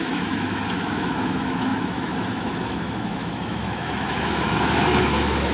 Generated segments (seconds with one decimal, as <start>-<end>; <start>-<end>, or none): 0.0-5.5